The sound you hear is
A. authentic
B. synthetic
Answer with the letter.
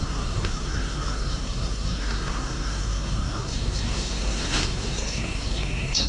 B